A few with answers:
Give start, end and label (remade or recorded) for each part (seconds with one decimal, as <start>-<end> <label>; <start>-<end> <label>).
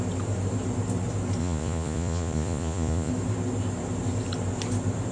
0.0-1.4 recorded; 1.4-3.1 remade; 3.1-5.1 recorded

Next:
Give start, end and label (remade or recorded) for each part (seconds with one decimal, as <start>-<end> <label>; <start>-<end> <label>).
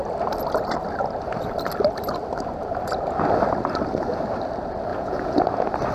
0.0-4.9 recorded; 4.9-5.4 remade; 5.4-5.9 recorded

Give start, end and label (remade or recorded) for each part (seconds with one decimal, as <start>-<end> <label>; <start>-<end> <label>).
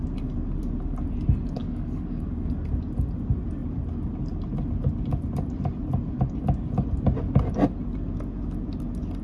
0.0-1.6 recorded; 1.6-2.3 remade; 2.3-9.2 recorded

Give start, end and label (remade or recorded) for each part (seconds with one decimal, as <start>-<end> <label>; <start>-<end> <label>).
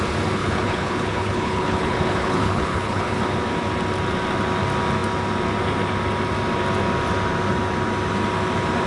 0.0-0.4 recorded; 0.4-3.2 remade; 3.2-8.9 recorded